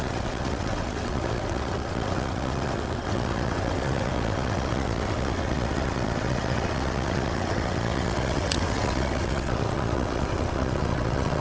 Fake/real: fake